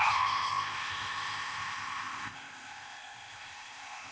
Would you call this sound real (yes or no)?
no